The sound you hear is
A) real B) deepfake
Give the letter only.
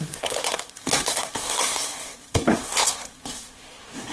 B